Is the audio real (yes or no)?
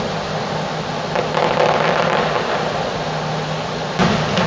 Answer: yes